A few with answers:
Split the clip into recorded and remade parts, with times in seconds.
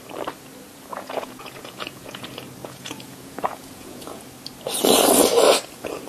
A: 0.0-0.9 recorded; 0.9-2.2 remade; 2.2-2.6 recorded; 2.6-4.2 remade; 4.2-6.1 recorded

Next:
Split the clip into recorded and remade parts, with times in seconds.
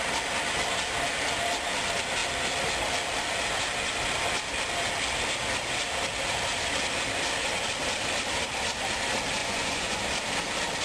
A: 0.0-9.4 recorded; 9.4-10.0 remade; 10.0-10.8 recorded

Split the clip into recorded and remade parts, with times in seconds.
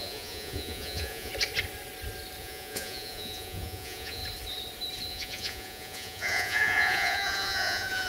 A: 0.0-1.3 remade; 1.3-2.4 recorded; 2.4-4.2 remade; 4.2-5.1 recorded; 5.1-8.1 remade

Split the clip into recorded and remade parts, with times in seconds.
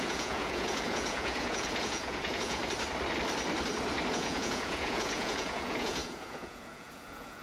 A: 0.0-2.6 remade; 2.6-4.1 recorded; 4.1-7.4 remade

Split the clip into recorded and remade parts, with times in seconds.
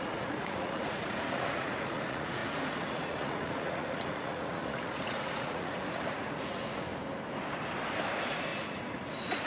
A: 0.0-6.9 remade; 6.9-8.1 recorded; 8.1-9.5 remade